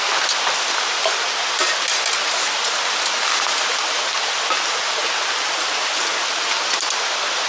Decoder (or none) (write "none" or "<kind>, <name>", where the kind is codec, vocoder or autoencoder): none